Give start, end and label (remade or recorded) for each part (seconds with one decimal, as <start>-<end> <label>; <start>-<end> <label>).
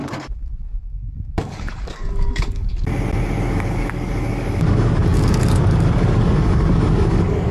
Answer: 0.0-2.9 remade; 2.9-3.4 recorded; 3.4-7.5 remade